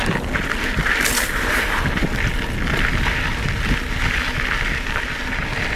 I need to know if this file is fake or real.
real